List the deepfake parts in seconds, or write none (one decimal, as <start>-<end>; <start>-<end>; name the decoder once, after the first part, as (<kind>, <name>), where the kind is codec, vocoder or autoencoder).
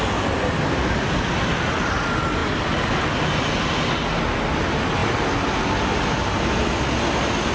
none